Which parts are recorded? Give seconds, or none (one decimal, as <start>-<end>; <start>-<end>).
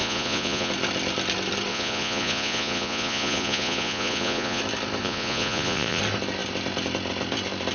0.7-1.7; 4.6-5.0; 6.0-7.7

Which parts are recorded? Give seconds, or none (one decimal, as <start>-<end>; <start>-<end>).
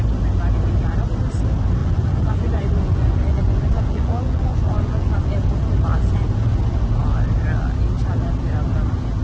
0.0-1.8; 5.3-9.2